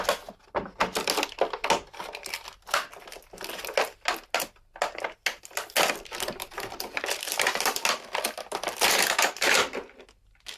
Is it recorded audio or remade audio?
recorded